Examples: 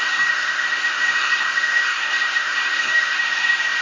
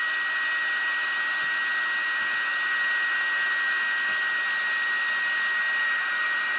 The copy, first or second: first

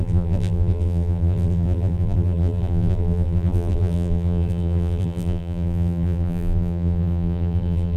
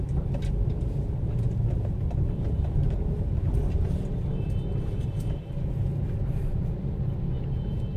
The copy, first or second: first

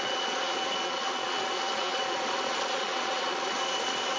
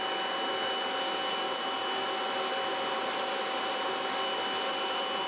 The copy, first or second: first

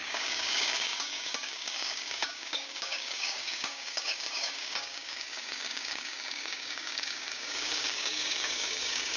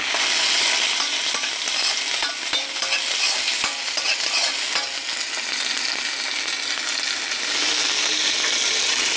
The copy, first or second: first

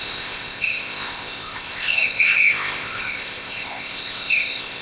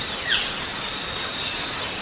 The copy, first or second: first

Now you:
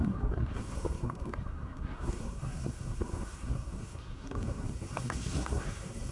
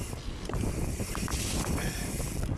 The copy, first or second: first